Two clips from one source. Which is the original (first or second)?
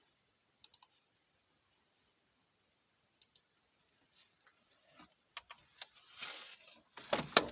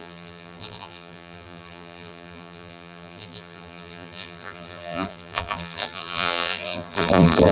first